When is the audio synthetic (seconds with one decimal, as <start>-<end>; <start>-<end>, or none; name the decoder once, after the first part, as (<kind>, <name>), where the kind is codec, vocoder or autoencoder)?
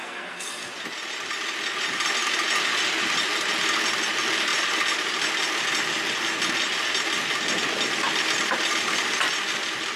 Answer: 0.0-0.7 (codec, SNAC)